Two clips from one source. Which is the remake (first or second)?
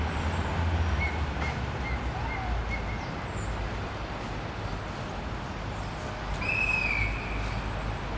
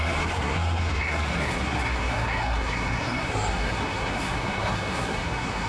second